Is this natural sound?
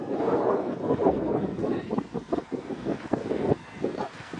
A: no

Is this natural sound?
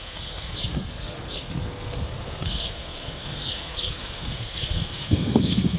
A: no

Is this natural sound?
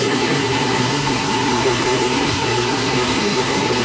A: no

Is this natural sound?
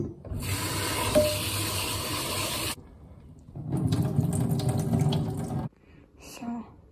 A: yes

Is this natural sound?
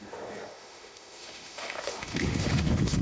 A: no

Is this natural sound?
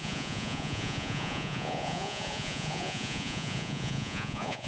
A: no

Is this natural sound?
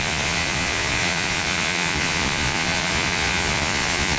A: no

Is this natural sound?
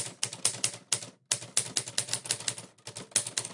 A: yes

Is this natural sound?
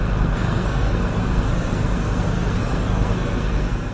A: no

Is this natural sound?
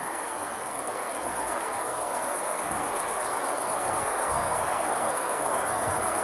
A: no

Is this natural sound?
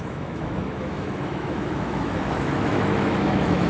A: no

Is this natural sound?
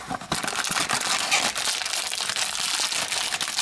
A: yes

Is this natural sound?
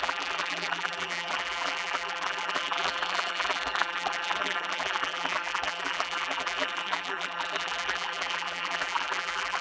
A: no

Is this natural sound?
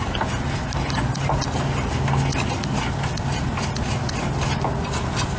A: yes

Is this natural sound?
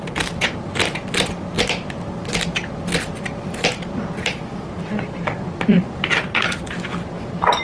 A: yes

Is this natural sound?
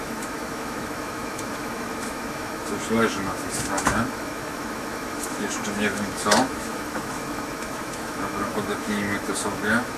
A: no